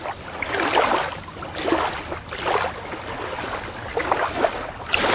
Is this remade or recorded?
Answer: recorded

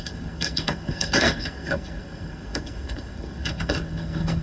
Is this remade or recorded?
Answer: remade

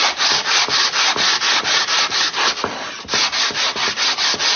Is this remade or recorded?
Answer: recorded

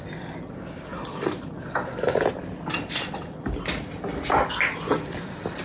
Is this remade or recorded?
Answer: recorded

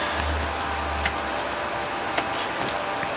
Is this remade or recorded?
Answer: recorded